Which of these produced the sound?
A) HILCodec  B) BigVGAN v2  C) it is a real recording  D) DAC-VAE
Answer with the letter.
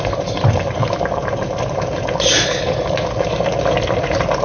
C